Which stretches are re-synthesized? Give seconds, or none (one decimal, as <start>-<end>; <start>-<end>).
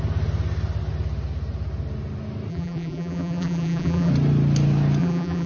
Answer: 2.5-4.1; 5.0-5.5